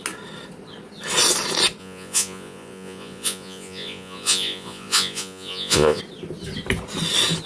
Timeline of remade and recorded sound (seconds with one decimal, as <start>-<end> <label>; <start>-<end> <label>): 0.0-1.8 recorded; 1.8-6.0 remade; 6.0-7.5 recorded